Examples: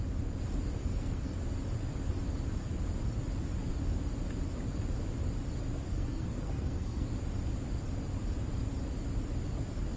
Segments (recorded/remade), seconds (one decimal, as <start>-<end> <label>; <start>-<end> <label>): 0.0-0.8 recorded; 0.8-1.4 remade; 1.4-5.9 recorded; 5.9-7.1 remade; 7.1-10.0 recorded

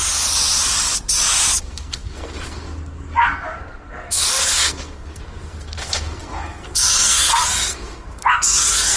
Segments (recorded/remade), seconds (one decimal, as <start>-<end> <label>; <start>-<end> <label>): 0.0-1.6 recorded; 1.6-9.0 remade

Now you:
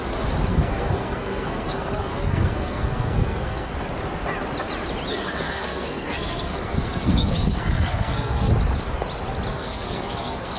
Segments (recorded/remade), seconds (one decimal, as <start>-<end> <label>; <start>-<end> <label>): 0.0-0.5 recorded; 0.5-3.7 remade; 3.7-5.1 recorded; 5.1-8.5 remade; 8.5-9.5 recorded; 9.5-10.6 remade

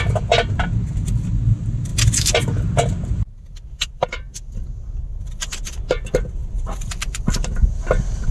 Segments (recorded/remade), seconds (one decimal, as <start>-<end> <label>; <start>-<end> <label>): 0.0-8.3 recorded

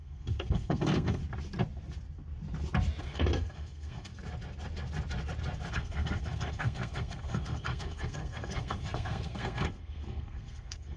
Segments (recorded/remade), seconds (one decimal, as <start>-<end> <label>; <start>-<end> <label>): 0.0-1.2 remade; 1.2-3.0 recorded; 3.0-4.1 remade; 4.1-5.7 recorded; 5.7-11.0 remade